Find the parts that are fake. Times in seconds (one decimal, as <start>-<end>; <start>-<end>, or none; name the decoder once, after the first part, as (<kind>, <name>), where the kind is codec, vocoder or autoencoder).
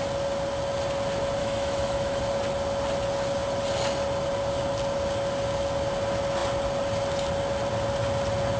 1.4-2.2 (autoencoder, DAC-VAE)